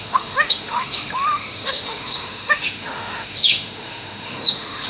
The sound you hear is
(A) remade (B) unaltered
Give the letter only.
A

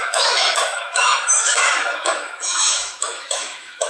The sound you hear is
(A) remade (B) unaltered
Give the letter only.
A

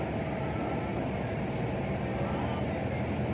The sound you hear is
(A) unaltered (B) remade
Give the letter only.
A